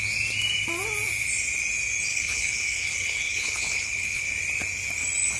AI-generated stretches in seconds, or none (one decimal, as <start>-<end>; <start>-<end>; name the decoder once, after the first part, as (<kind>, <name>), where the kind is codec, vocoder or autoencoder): 2.1-4.3 (codec, HILCodec)